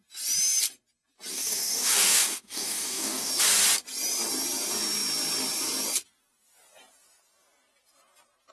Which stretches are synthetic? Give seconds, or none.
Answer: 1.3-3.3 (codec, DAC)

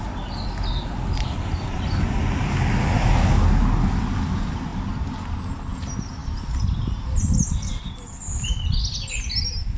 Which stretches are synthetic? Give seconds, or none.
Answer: none

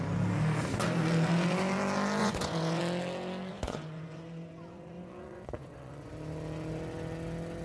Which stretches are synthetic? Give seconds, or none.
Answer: 2.2-2.8 (vocoder, Vocos); 3.5-6.1

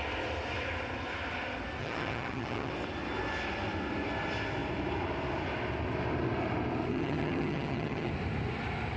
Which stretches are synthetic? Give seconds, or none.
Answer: 1.8-2.7 (vocoder, HiFi-GAN); 6.9-8.1

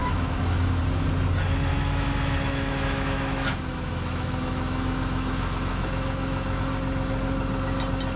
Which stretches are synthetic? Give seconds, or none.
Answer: 0.0-0.8 (autoencoder, DAC-VAE); 1.7-6.6